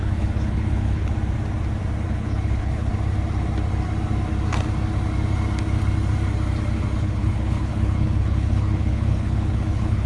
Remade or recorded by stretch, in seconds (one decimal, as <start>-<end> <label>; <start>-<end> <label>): 0.0-1.0 remade; 1.0-2.1 recorded; 2.1-2.9 remade; 2.9-7.0 recorded; 7.0-10.1 remade